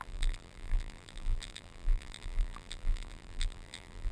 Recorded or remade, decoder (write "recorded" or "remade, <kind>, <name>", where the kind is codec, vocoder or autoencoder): remade, vocoder, BigVGAN v2